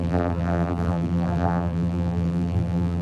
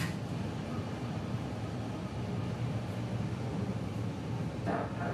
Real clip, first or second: second